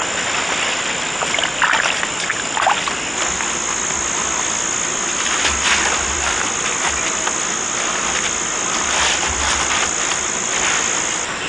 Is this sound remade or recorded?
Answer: recorded